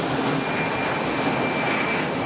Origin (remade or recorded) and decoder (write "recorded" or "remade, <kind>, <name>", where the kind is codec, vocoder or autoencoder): recorded